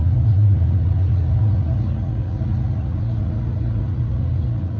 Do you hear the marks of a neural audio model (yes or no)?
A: yes